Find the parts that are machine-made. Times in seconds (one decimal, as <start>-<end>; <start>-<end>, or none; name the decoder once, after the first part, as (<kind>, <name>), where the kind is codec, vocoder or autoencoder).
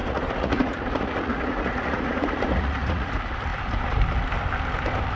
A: 0.0-3.1 (vocoder, Vocos)